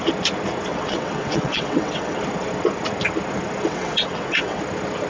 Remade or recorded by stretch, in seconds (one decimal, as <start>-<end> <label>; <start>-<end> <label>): 0.0-0.7 recorded; 0.7-2.2 remade; 2.2-3.7 recorded; 3.7-4.6 remade; 4.6-5.1 recorded

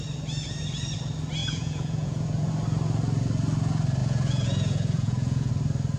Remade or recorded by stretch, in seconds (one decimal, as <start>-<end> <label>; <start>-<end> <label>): 0.0-1.4 recorded; 1.4-2.5 remade; 2.5-4.0 recorded; 4.0-5.5 remade; 5.5-6.0 recorded